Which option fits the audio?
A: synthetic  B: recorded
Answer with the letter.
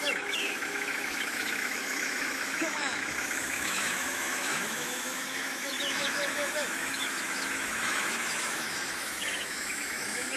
A